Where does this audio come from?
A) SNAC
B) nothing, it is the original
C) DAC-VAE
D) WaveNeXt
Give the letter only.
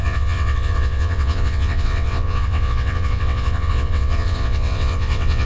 D